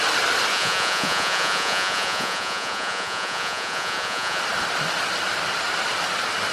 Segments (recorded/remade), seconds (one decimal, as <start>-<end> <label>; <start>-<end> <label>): 0.0-0.5 recorded; 0.5-4.4 remade; 4.4-6.5 recorded